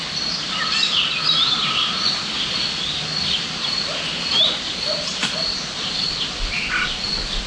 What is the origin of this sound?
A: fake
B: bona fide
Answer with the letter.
B